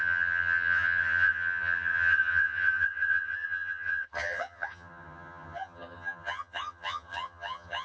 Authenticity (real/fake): fake